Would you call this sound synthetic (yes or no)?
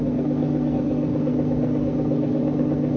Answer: yes